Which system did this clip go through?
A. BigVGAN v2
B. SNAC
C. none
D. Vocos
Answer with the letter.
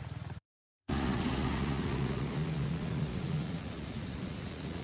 D